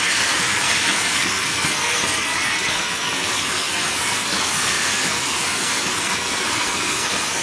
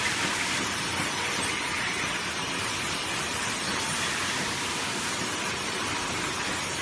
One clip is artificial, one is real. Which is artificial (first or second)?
first